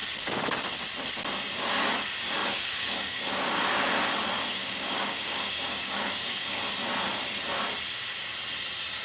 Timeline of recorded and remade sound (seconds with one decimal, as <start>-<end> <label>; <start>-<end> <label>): 0.0-2.4 recorded; 2.4-3.6 remade; 3.6-4.6 recorded; 4.6-6.6 remade; 6.6-9.0 recorded